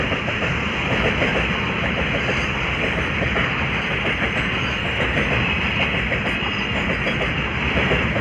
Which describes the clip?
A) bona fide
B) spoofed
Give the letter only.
A